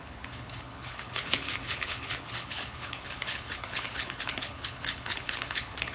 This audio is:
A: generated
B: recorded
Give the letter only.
A